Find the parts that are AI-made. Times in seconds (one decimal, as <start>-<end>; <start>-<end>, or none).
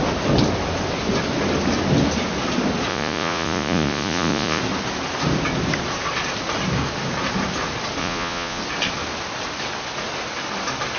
2.9-4.6; 8.0-8.6